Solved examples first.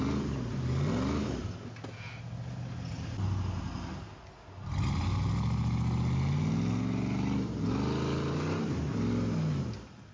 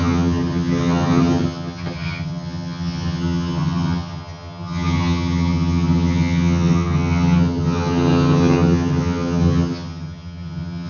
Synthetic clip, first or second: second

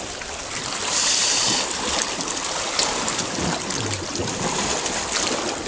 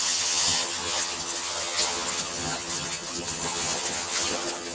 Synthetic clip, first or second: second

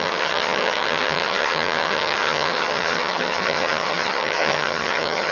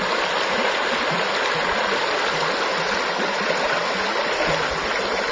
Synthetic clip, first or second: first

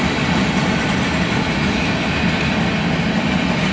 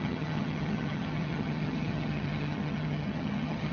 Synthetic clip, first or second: second